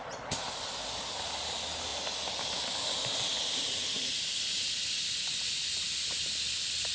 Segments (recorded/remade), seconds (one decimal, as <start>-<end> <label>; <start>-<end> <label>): 0.0-6.9 recorded